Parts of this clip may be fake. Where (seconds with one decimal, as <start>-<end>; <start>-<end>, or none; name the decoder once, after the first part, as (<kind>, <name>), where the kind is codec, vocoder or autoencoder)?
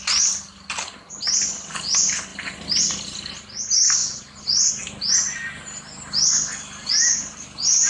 2.3-3.3 (vocoder, BigVGAN v2); 4.0-4.7